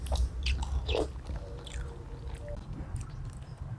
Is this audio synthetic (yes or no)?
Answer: no